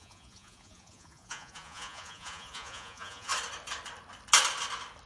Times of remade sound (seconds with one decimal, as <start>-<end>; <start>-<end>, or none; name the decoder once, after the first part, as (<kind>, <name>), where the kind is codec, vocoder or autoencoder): 0.0-3.3 (vocoder, Vocos)